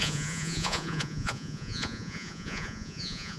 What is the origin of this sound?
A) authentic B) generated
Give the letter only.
B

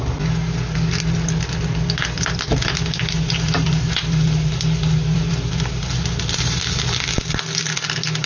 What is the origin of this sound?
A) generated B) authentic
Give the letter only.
B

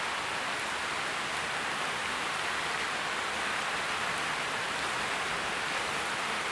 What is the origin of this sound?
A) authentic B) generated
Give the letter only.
A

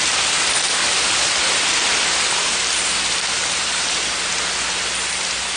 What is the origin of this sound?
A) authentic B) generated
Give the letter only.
A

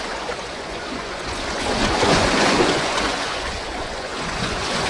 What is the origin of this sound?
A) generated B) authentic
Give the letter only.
A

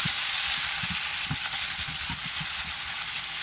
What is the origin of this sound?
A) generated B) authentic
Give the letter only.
B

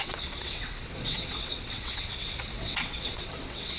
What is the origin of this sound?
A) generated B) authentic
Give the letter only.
A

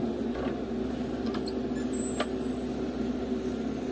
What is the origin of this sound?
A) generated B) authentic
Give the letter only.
B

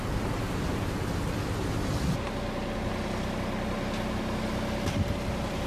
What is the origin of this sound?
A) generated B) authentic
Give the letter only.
B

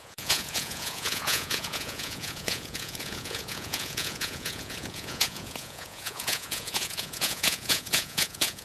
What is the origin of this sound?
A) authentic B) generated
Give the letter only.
B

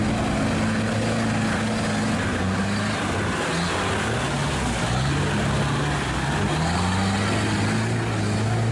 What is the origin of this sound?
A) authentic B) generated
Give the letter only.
A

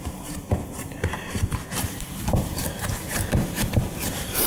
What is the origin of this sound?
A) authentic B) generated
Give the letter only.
B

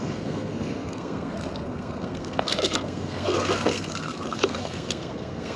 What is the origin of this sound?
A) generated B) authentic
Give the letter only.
A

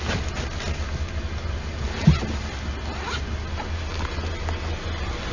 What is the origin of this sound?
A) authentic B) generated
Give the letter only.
A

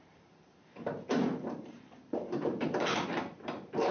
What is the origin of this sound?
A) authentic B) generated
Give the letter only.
B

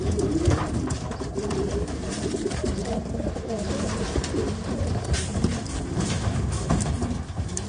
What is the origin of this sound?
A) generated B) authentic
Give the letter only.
A